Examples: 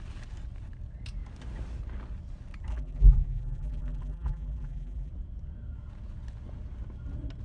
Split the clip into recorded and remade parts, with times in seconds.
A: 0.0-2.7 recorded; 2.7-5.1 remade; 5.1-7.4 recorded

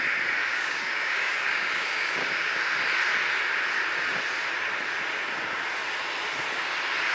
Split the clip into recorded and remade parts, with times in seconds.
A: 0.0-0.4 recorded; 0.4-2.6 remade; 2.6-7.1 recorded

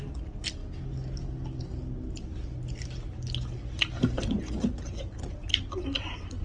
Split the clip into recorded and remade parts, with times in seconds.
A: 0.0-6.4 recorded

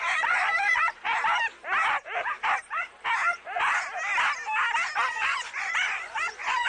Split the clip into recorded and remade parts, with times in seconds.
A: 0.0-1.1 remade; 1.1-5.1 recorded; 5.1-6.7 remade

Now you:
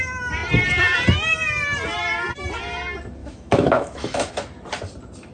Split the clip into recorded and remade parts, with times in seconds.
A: 0.0-3.2 recorded; 3.2-4.3 remade; 4.3-5.3 recorded